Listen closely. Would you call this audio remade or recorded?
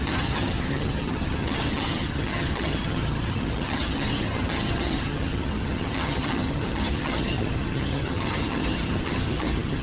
remade